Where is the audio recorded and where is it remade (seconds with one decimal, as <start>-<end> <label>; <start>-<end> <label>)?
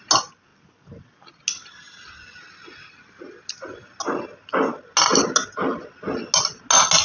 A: 0.0-7.0 recorded